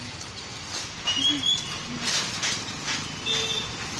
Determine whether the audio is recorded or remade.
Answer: recorded